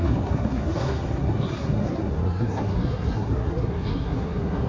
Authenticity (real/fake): fake